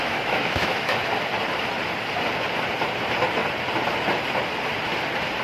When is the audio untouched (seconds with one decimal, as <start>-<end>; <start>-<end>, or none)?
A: 1.1-5.4